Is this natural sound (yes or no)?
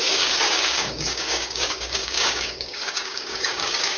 no